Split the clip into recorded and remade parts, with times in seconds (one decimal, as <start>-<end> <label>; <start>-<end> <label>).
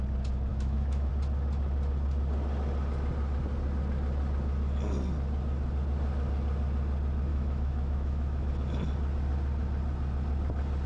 0.0-0.5 recorded; 0.5-1.1 remade; 1.1-7.3 recorded; 7.3-8.5 remade; 8.5-10.9 recorded